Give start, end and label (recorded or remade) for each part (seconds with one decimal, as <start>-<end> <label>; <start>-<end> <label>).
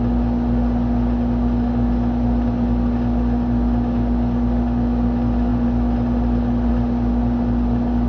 0.0-8.1 recorded